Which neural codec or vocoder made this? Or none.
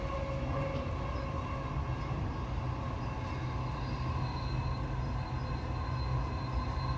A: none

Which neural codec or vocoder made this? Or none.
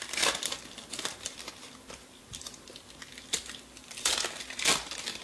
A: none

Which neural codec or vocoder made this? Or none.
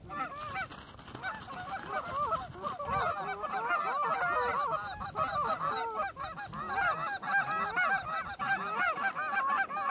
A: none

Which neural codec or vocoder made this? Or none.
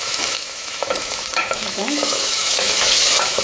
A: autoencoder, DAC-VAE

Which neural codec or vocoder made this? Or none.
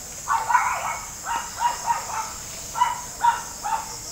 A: none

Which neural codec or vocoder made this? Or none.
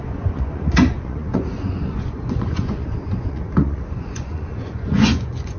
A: vocoder, Vocos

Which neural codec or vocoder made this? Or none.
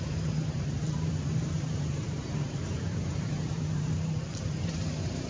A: vocoder, BigVGAN v2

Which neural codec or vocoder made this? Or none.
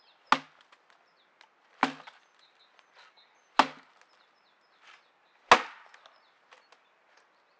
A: none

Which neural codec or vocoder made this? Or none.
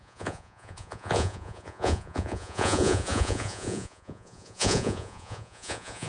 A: vocoder, Vocos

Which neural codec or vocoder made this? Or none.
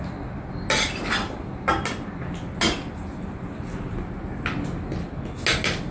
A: none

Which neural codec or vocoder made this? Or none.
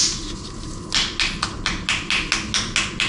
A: none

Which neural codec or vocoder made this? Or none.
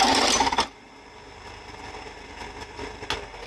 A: none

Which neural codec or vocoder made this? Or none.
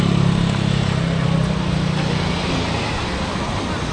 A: none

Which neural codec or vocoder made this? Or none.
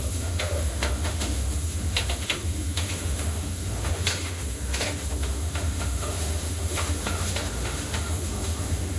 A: autoencoder, DAC-VAE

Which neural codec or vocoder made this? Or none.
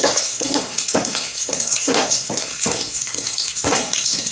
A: codec, SNAC